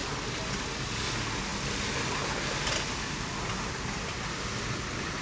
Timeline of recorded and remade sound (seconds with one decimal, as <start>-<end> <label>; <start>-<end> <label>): 0.0-5.2 recorded